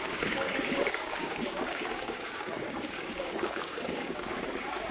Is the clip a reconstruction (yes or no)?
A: yes